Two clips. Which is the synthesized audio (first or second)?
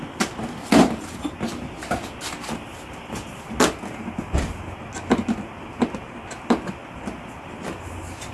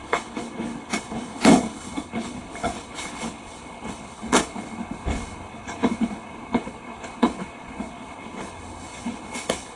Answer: second